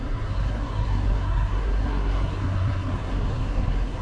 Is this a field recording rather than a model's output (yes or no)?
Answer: no